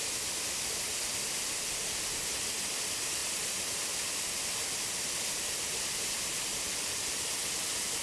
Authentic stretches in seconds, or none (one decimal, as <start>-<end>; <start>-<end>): 0.0-8.0